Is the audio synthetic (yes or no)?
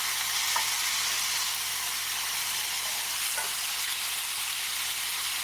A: no